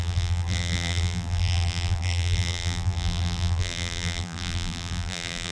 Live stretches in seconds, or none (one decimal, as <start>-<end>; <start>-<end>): none